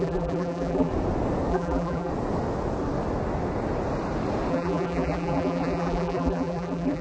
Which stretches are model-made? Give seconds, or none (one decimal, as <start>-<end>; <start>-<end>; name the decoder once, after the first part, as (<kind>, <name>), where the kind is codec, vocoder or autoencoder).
0.0-0.9 (vocoder, BigVGAN v2); 1.5-2.1; 4.5-7.0